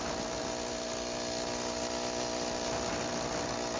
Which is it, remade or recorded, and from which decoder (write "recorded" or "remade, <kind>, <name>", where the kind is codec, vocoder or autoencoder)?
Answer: recorded